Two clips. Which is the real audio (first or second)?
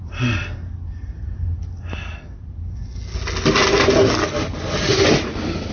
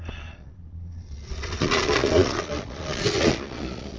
first